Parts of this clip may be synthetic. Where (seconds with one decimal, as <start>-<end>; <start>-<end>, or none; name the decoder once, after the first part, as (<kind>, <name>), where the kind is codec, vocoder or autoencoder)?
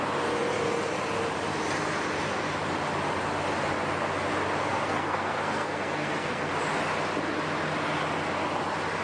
4.6-6.5 (codec, SNAC)